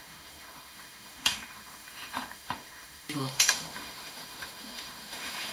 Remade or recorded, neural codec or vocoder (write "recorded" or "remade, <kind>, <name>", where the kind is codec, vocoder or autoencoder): remade, autoencoder, DAC-VAE